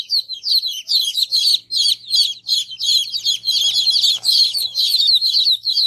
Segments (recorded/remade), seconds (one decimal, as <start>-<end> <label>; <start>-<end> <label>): 0.0-0.5 remade; 0.5-1.1 recorded; 1.1-1.5 remade; 1.5-4.1 recorded; 4.1-5.9 remade